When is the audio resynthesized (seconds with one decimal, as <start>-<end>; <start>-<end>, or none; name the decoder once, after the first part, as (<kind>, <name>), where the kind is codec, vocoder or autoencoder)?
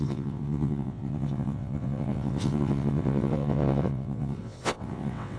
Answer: 0.0-5.4 (vocoder, WaveNeXt)